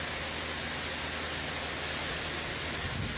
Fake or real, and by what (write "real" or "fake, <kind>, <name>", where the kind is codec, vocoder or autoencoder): real